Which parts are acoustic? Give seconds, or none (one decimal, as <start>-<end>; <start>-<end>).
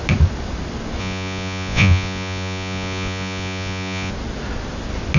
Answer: 0.0-1.0; 4.1-5.2